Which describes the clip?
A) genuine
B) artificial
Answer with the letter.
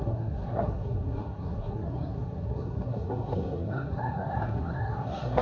B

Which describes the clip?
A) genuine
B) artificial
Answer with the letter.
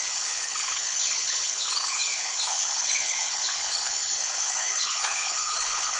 B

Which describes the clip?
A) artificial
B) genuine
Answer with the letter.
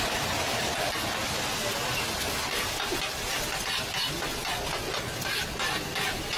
B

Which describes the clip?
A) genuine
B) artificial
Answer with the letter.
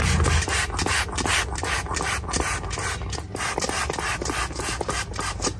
A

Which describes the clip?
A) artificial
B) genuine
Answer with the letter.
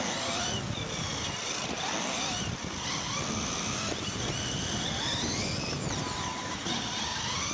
B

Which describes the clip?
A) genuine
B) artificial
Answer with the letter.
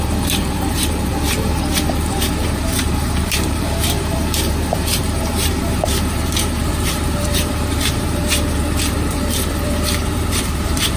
B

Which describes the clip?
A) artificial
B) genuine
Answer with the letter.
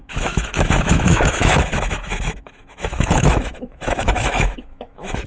A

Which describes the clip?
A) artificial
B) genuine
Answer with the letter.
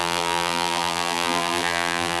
A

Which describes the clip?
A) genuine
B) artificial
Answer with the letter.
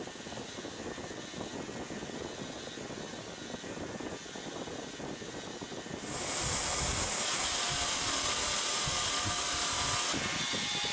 A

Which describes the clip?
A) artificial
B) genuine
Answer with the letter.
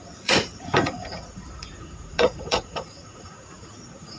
A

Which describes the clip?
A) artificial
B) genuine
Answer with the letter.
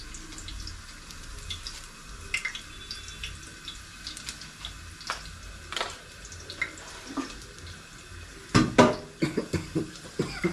B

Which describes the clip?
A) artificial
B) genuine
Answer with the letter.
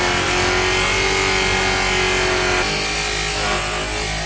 B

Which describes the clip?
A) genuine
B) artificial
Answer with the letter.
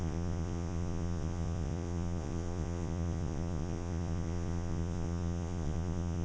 B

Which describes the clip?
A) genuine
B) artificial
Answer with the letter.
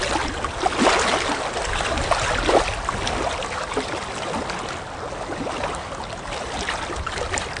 A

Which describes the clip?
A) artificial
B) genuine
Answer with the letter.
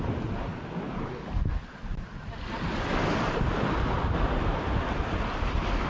B